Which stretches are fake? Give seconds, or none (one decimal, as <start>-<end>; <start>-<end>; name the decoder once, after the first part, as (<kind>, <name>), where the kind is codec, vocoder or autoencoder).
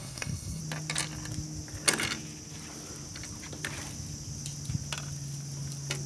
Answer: 0.0-0.6 (codec, SNAC)